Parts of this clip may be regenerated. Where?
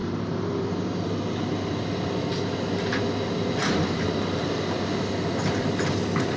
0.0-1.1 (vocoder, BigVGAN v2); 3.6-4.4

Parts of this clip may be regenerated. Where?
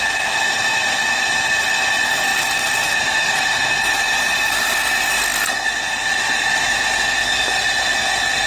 2.3-4.6 (vocoder, BigVGAN v2)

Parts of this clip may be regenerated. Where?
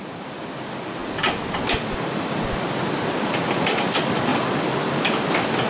0.0-1.0 (vocoder, BigVGAN v2); 1.7-5.7